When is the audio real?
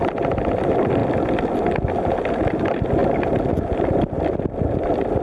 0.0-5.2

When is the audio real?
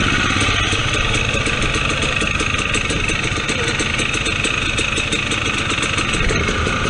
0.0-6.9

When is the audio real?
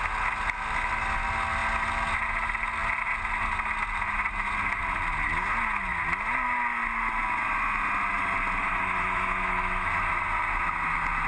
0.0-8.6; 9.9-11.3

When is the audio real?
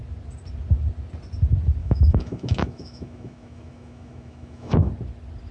0.0-1.8; 4.9-5.5